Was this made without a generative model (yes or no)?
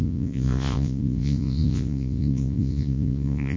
no